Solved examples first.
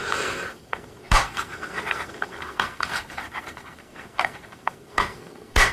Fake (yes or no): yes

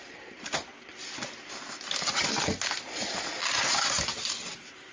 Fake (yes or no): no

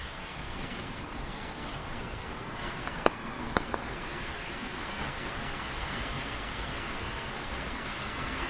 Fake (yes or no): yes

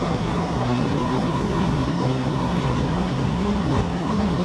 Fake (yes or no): yes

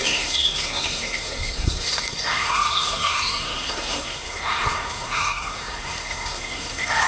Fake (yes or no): yes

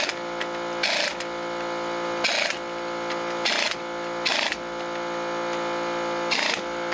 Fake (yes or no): no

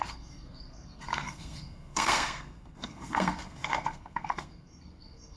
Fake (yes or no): yes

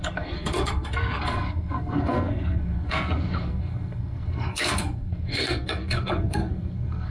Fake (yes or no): yes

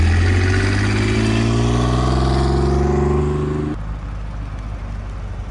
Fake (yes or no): no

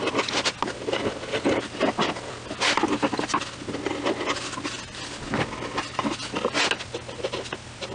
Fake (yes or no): no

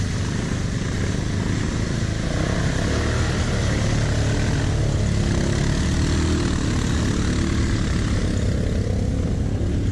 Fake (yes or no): no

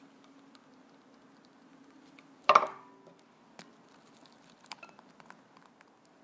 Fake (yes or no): no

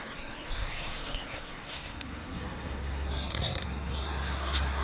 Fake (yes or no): yes